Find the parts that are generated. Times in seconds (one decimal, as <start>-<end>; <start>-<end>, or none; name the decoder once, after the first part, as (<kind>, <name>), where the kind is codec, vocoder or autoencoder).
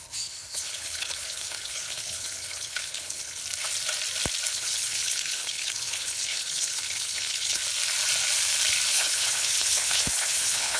0.0-3.4 (codec, HILCodec); 4.5-7.6; 8.9-10.8